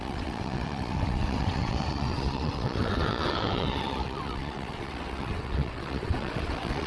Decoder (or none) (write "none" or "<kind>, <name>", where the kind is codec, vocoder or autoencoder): vocoder, WaveNeXt